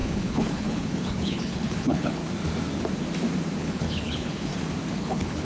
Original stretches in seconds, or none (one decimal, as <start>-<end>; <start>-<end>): 2.2-3.6; 4.5-5.0